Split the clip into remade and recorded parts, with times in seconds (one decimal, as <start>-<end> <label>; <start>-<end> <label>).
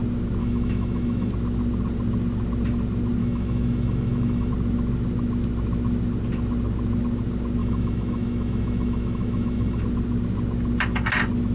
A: 0.0-0.4 recorded; 0.4-1.3 remade; 1.3-3.2 recorded; 3.2-4.5 remade; 4.5-7.6 recorded; 7.6-9.8 remade; 9.8-11.5 recorded